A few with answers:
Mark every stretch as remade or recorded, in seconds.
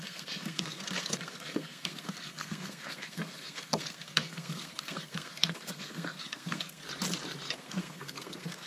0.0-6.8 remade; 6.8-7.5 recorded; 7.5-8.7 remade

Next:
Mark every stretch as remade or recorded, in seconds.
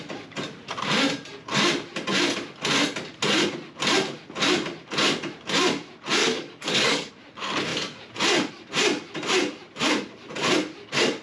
0.0-6.2 recorded; 6.2-7.1 remade; 7.1-11.2 recorded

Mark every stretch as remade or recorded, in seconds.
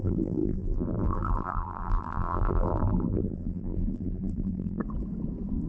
0.0-4.8 remade; 4.8-5.7 recorded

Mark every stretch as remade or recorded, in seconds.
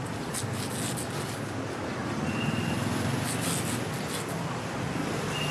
0.0-5.5 recorded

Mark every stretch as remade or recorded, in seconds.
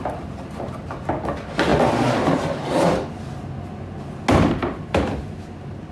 0.0-5.9 recorded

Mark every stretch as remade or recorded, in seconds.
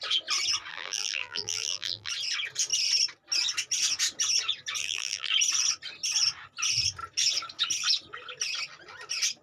0.0-0.7 recorded; 0.7-2.1 remade; 2.1-4.8 recorded; 4.8-5.3 remade; 5.3-9.4 recorded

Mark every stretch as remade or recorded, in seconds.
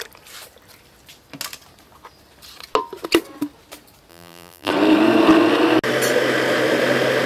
0.0-4.1 recorded; 4.1-4.7 remade; 4.7-7.3 recorded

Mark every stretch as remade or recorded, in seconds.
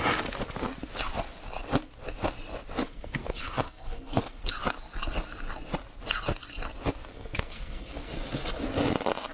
0.0-2.8 recorded; 2.8-4.5 remade; 4.5-7.1 recorded; 7.1-8.1 remade; 8.1-9.3 recorded